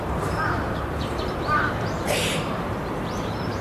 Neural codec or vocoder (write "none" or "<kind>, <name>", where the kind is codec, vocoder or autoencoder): vocoder, BigVGAN v2